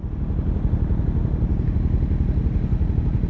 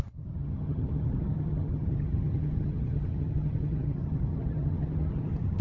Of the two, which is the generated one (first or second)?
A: second